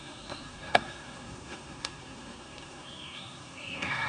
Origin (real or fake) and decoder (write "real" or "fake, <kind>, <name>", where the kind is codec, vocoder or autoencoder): fake, codec, SNAC